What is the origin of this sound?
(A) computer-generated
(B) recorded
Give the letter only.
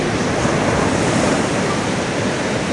B